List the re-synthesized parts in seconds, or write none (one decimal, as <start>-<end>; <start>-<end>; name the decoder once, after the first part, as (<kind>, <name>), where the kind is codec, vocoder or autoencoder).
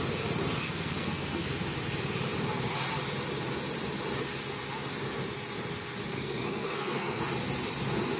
0.6-1.5 (codec, SNAC); 6.1-7.2